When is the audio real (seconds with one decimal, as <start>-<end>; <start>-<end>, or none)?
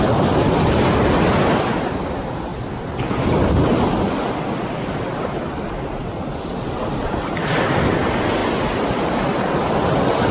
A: 0.0-10.3